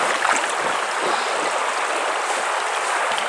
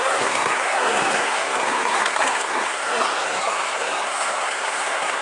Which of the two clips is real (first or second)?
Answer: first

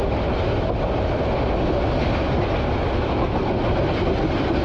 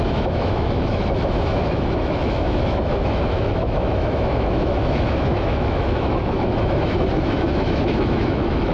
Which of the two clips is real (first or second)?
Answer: first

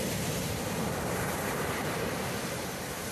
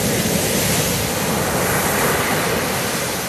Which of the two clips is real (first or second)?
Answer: second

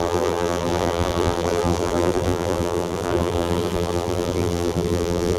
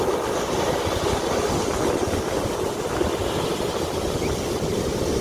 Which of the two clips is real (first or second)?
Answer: second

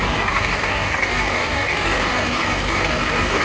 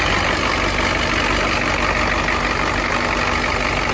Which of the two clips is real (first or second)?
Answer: second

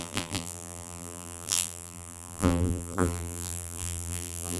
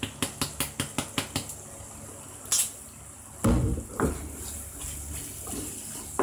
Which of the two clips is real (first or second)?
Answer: second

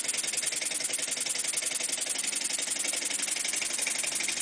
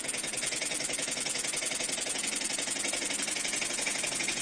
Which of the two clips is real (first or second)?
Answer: first